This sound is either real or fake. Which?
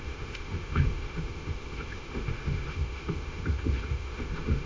fake